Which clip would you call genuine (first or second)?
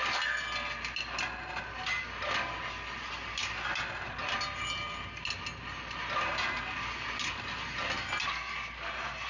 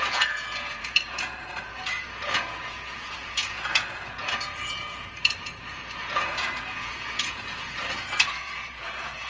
first